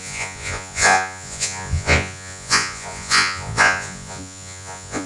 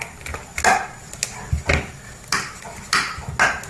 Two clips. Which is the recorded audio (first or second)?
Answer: second